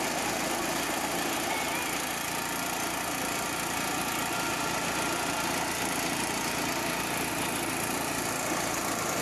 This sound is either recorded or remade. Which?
recorded